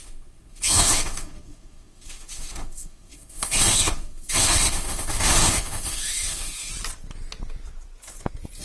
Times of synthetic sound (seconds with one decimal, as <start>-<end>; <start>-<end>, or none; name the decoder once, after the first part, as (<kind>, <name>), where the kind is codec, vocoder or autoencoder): 0.0-6.7 (autoencoder, DAC-VAE)